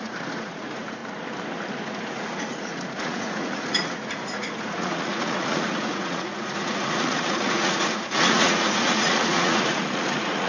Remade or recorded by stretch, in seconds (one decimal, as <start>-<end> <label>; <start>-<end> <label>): 0.0-1.0 remade; 1.0-1.9 recorded; 1.9-10.5 remade